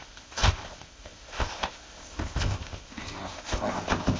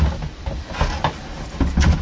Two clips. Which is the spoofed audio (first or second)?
first